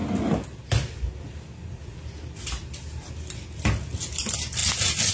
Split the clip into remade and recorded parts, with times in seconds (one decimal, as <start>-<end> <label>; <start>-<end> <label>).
0.0-5.1 recorded